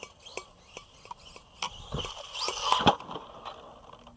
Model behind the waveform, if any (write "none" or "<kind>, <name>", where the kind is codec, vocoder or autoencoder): none